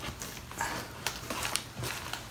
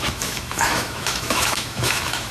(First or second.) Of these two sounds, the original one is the first